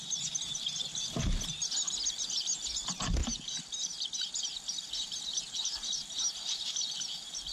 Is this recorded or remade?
recorded